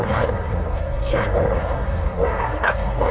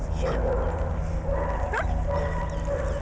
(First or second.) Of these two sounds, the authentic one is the second